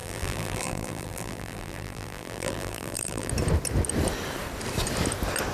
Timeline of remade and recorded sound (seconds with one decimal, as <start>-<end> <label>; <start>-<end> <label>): 0.0-3.3 remade; 3.3-5.5 recorded